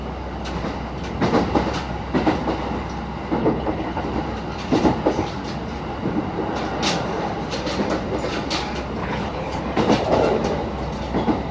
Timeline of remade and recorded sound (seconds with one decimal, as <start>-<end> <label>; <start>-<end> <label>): 0.0-3.4 recorded; 3.4-4.0 remade; 4.0-9.0 recorded; 9.0-9.6 remade; 9.6-11.5 recorded